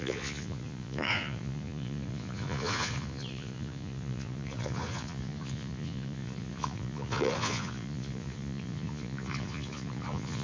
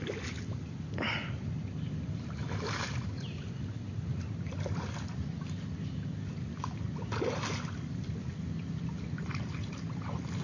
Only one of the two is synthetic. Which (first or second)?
first